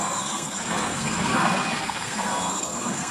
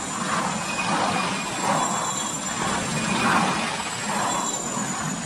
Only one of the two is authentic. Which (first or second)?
second